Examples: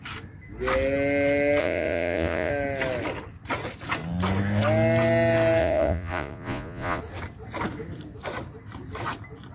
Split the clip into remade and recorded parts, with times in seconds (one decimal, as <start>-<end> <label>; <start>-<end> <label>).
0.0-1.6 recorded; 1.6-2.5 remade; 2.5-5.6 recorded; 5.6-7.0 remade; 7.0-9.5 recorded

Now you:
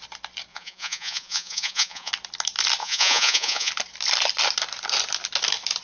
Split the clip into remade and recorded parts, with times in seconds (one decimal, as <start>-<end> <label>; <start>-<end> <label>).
0.0-0.5 recorded; 0.5-2.1 remade; 2.1-2.8 recorded; 2.8-3.7 remade; 3.7-5.8 recorded

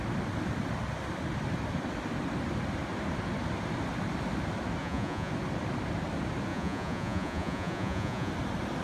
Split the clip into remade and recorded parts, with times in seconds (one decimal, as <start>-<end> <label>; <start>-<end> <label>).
0.0-4.8 recorded; 4.8-5.3 remade; 5.3-6.5 recorded; 6.5-8.3 remade; 8.3-8.8 recorded

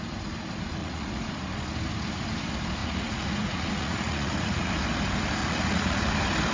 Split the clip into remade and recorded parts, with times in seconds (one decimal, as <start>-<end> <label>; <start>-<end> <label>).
0.0-0.8 recorded; 0.8-1.3 remade; 1.3-2.8 recorded; 2.8-4.7 remade; 4.7-5.4 recorded; 5.4-6.1 remade; 6.1-6.5 recorded

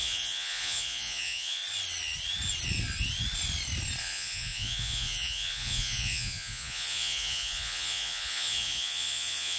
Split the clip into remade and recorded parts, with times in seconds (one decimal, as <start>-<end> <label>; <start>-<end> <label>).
0.0-1.6 remade; 1.6-4.0 recorded; 4.0-9.6 remade

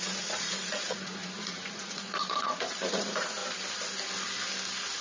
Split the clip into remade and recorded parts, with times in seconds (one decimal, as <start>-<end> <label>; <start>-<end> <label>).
0.0-3.4 remade; 3.4-5.0 recorded

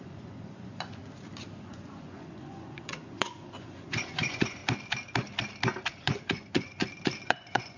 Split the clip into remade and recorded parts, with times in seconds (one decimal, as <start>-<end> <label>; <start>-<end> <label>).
0.0-1.0 remade; 1.0-1.6 recorded; 1.6-4.6 remade; 4.6-5.9 recorded; 5.9-6.8 remade; 6.8-7.3 recorded; 7.3-7.8 remade

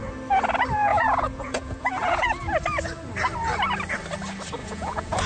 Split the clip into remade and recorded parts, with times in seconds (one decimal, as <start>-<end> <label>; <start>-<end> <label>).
0.0-0.9 recorded; 0.9-2.3 remade; 2.3-4.6 recorded; 4.6-5.3 remade